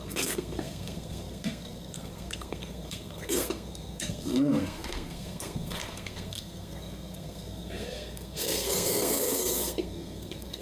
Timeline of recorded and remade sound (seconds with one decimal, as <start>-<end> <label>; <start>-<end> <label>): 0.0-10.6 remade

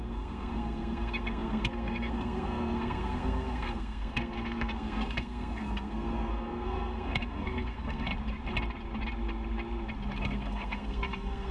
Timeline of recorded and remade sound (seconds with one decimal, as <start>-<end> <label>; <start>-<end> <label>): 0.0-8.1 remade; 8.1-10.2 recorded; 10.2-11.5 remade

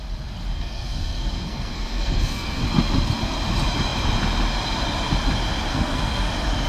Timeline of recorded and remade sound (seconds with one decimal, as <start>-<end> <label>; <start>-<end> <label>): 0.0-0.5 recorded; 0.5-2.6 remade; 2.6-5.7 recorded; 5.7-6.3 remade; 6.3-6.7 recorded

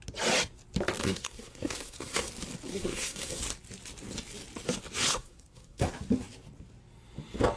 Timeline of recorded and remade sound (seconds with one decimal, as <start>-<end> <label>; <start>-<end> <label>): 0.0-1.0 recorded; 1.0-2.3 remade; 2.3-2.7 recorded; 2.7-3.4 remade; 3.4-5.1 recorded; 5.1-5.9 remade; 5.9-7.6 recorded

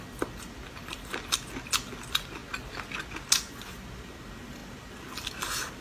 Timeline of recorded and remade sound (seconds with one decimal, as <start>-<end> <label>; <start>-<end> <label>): 0.0-5.8 recorded

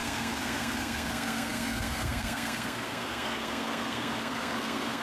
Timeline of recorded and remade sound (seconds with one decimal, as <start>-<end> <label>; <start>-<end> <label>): 0.0-5.0 remade

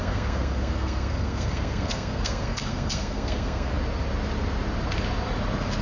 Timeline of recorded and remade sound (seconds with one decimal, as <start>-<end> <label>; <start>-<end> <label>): 0.0-3.7 remade; 3.7-5.8 recorded